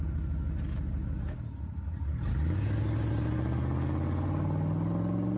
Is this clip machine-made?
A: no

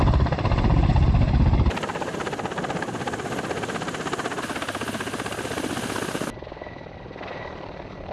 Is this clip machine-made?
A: no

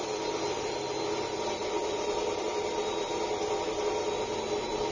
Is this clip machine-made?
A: no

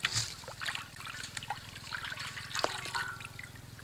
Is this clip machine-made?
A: no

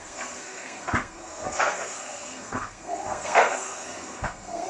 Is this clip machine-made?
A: yes